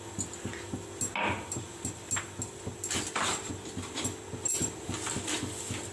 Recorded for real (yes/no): yes